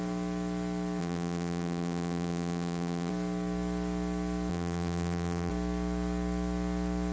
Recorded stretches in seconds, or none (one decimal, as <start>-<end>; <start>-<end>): 0.0-1.0; 3.1-4.5; 5.5-7.1